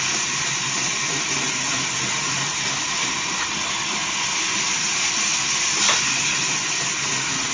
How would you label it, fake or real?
fake